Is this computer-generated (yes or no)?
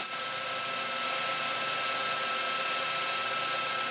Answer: no